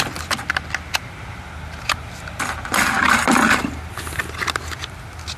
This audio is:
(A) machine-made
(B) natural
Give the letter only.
B